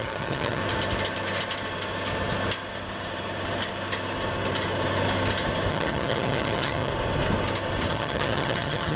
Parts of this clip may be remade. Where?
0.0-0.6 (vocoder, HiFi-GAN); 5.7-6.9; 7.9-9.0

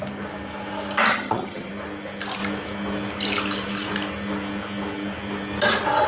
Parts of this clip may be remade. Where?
1.1-1.7 (vocoder, HiFi-GAN)